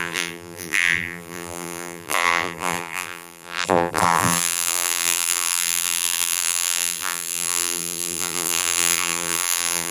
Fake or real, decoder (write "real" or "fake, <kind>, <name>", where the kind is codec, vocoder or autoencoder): fake, vocoder, BigVGAN v2